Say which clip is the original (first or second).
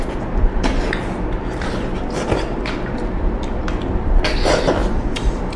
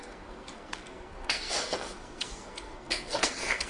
first